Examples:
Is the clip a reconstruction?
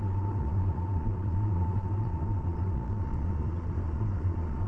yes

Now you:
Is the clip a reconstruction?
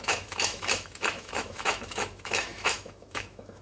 yes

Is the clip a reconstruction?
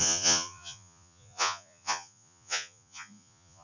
yes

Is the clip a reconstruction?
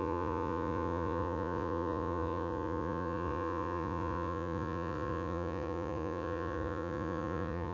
yes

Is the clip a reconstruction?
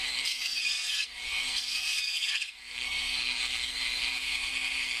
yes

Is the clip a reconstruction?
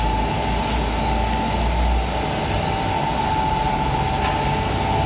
no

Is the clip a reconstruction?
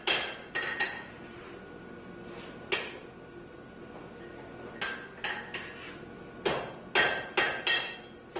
no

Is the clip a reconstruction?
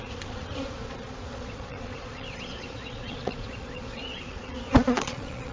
yes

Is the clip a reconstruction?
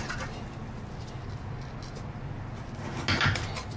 no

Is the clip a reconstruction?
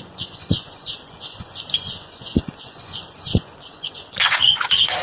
yes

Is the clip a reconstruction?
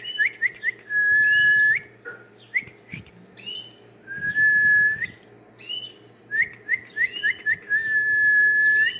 no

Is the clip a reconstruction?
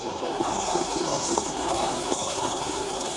yes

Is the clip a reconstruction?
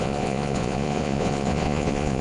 yes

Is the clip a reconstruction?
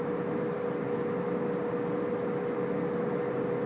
no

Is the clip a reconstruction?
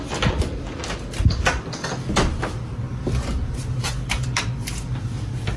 no